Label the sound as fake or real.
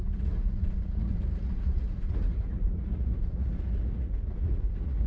fake